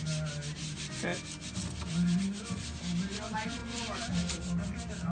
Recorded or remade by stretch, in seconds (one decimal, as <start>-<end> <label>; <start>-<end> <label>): 0.0-5.1 recorded